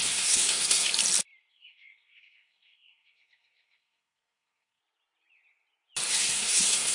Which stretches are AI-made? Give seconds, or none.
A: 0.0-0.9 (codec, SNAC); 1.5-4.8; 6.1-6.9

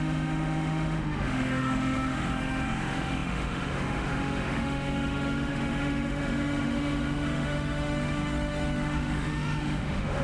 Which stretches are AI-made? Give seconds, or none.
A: 0.0-10.2 (autoencoder, DAC-VAE)

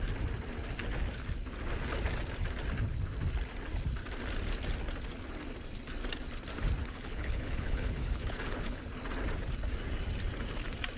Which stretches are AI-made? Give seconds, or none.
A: 6.8-8.8 (codec, HILCodec)

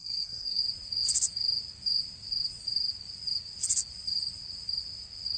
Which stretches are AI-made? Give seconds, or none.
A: 0.0-0.6 (codec, SNAC)

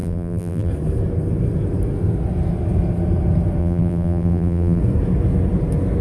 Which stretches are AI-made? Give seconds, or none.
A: 0.0-0.7 (vocoder, BigVGAN v2); 3.6-4.8

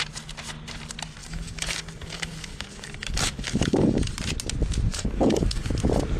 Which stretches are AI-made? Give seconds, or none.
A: 1.2-4.1 (codec, DAC); 4.9-5.7